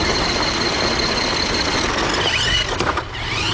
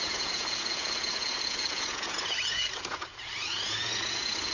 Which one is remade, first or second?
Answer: second